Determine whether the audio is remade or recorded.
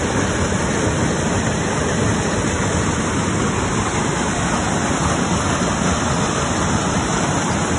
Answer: recorded